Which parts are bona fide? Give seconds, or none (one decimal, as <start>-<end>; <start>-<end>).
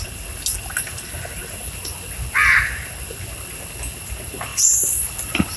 0.0-4.5